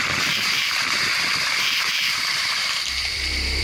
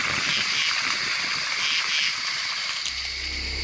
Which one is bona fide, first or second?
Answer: second